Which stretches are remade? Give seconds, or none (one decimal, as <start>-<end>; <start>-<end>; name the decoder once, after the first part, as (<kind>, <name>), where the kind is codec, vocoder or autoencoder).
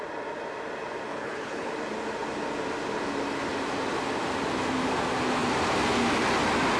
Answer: 1.1-1.7 (codec, HILCodec)